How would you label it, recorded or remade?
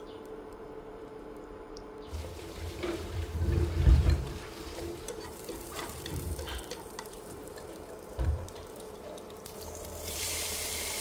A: remade